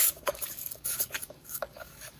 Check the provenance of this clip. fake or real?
fake